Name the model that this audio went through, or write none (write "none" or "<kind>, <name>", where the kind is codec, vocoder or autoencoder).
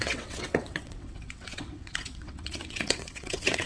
vocoder, WaveNeXt